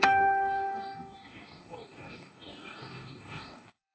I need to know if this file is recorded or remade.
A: remade